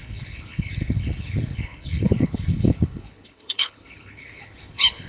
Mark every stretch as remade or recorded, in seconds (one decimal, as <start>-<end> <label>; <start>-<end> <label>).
0.0-5.1 remade